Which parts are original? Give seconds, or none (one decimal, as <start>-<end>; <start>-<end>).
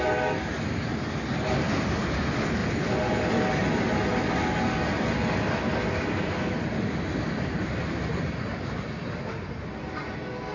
0.0-10.5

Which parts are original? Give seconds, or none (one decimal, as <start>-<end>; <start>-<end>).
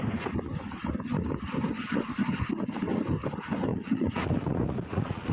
0.0-3.7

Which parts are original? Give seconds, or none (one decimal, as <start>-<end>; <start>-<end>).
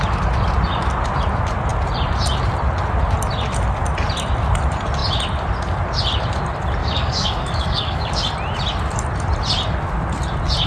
0.0-6.8; 8.2-10.7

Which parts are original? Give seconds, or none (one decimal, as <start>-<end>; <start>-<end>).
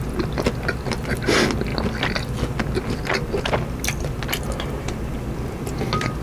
0.0-6.2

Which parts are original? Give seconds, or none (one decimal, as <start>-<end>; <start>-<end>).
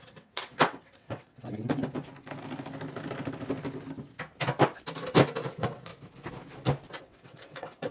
1.8-5.5; 5.9-7.0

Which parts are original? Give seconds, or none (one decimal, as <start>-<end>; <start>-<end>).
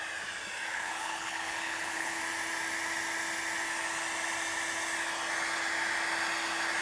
0.0-0.7; 2.2-6.8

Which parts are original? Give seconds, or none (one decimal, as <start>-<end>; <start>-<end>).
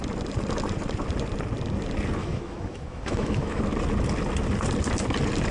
0.0-2.2; 3.6-5.5